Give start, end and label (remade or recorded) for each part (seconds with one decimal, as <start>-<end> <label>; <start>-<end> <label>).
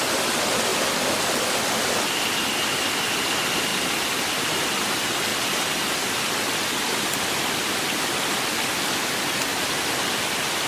0.0-0.7 recorded; 0.7-1.7 remade; 1.7-10.7 recorded